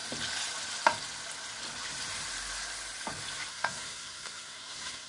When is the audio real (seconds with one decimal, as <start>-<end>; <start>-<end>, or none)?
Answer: 0.0-3.5

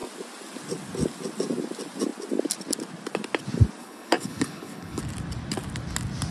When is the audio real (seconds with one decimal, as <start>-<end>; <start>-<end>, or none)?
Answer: 0.0-3.8; 5.0-6.3